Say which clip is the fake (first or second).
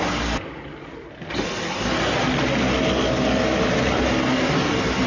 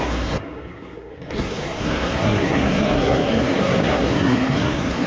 second